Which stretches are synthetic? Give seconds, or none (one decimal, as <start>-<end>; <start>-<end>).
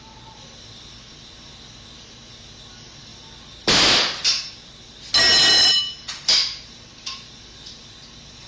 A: none